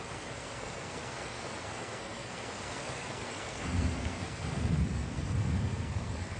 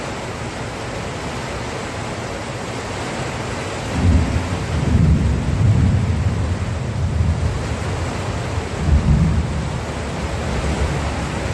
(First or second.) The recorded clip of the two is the second